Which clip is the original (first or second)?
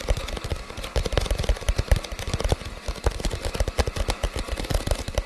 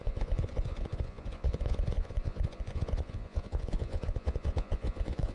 first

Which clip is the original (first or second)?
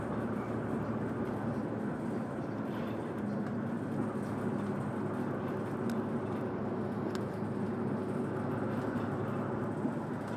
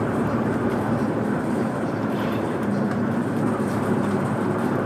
first